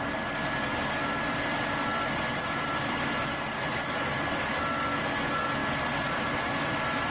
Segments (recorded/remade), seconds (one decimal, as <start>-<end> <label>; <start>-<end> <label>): 0.0-7.1 recorded